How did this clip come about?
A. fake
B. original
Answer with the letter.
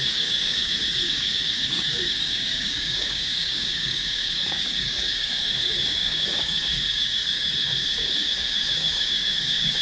A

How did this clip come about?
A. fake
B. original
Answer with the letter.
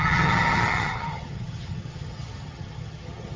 A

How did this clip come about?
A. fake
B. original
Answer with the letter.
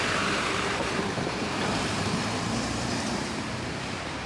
A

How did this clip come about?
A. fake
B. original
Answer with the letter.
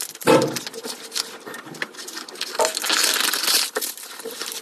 B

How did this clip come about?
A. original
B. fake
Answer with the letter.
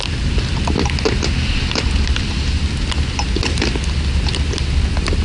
A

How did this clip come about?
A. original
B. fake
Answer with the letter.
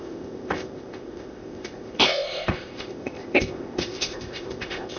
B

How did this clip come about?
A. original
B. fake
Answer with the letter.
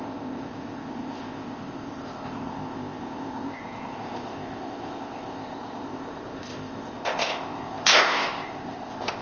B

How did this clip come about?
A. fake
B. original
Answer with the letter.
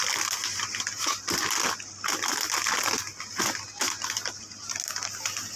B